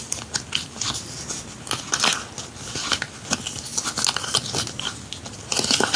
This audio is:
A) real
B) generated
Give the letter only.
A